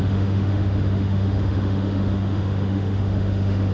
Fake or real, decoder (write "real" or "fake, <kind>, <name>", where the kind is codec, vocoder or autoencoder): fake, autoencoder, DAC-VAE